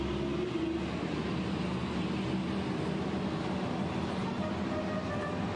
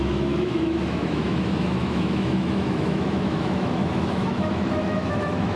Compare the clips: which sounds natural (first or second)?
first